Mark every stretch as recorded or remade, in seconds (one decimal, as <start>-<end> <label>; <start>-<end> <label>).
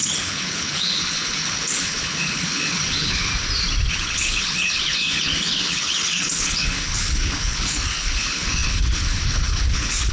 0.0-3.3 remade; 3.3-3.9 recorded; 3.9-10.1 remade